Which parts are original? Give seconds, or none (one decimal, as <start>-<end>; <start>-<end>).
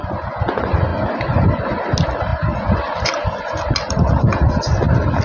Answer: 0.0-5.2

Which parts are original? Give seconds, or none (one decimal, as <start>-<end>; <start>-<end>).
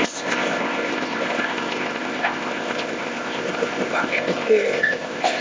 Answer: none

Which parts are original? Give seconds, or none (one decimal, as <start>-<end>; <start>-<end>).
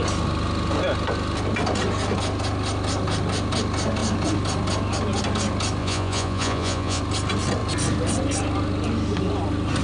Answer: 0.0-5.8; 7.0-9.8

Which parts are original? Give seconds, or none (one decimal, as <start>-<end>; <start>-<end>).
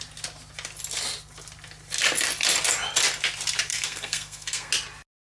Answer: 0.0-3.7; 4.7-5.2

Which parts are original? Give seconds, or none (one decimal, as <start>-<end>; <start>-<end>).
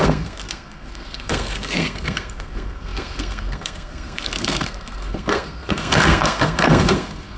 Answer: none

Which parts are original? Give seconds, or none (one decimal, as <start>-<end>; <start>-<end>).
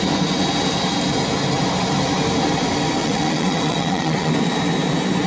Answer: 0.0-3.0; 4.3-5.3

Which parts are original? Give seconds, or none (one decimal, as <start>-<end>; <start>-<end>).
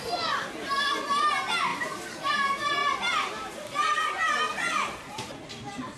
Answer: 0.0-6.0